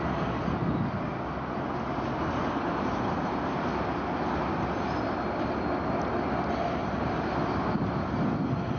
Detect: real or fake real